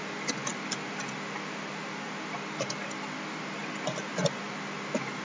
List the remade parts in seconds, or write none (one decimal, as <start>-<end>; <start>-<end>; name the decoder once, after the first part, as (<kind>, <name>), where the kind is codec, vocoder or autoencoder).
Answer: none